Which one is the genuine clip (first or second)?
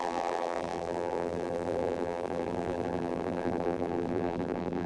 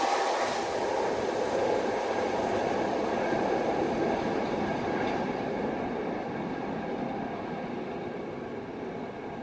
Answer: second